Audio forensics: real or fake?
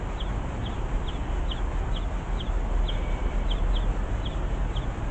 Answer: real